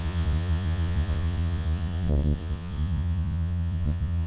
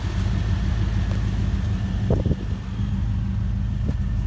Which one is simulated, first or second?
first